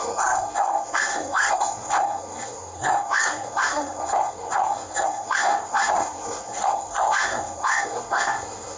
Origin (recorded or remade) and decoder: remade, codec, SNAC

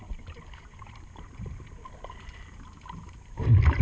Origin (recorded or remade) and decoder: recorded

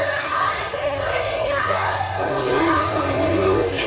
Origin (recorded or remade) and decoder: remade, codec, SNAC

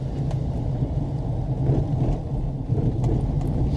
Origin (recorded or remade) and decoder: recorded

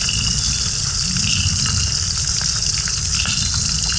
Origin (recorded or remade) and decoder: recorded